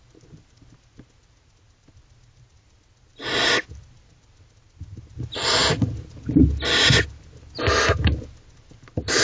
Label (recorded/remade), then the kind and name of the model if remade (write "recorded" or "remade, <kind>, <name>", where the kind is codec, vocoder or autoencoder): recorded